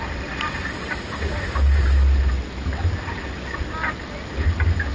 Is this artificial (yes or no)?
no